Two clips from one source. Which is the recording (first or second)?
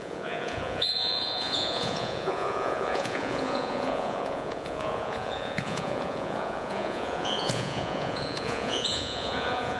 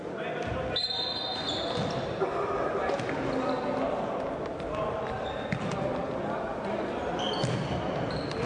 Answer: second